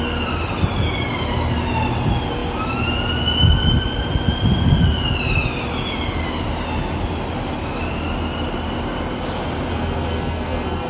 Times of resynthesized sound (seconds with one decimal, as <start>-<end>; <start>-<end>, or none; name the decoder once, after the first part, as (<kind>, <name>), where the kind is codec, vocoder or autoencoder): 9.7-10.9 (codec, SNAC)